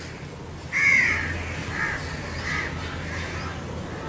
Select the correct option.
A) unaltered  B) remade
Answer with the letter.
A